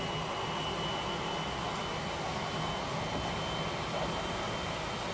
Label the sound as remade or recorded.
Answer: recorded